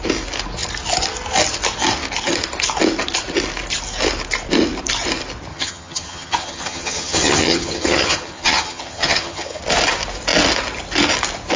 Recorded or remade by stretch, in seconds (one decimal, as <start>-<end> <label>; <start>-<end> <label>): 0.0-5.5 recorded; 5.5-9.6 remade; 9.6-11.6 recorded